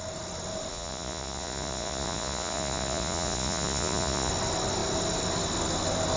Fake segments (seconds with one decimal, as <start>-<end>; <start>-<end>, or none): 0.7-4.3